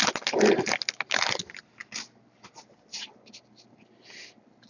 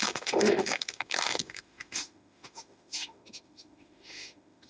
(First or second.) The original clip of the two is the first